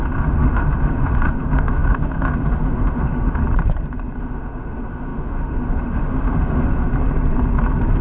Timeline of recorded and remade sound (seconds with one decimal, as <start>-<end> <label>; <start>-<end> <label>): 0.0-3.4 remade; 3.4-4.2 recorded; 4.2-6.9 remade; 6.9-8.0 recorded